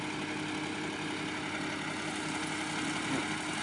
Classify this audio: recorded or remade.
recorded